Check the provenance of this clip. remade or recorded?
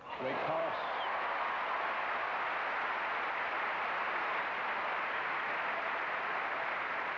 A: recorded